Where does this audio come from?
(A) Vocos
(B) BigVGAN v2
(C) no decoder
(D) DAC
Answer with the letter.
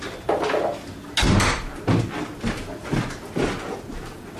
C